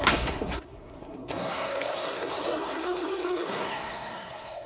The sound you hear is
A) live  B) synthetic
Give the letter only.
B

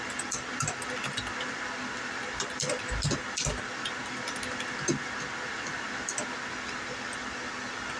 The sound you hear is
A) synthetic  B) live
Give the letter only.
B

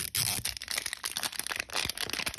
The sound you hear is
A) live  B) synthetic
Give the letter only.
A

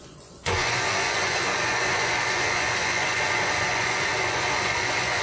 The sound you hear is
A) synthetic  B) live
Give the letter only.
A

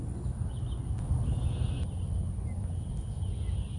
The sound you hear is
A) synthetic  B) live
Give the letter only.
B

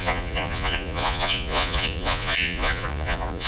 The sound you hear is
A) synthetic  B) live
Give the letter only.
A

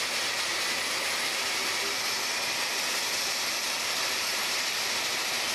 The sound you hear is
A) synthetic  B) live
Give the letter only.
B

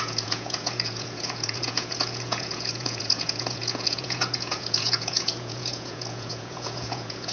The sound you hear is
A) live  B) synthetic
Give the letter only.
B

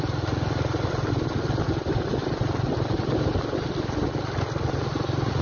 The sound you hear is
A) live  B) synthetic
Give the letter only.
A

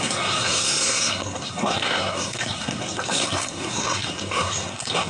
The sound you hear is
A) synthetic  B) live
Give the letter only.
A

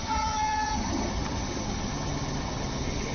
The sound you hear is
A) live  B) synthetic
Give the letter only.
B